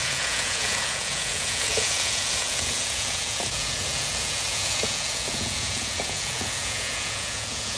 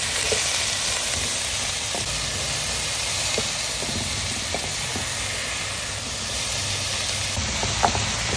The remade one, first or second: first